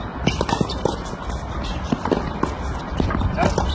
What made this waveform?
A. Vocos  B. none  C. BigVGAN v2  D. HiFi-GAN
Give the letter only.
B